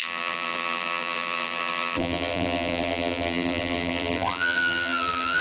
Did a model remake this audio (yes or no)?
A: yes